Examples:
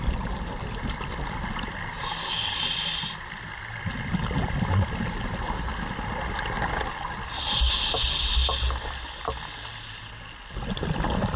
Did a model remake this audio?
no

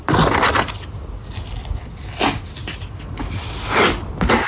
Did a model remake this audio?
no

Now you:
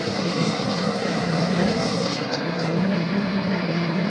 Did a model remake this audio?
yes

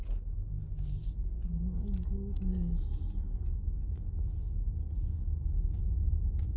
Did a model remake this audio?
no